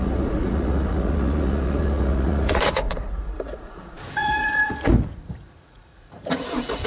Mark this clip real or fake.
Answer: fake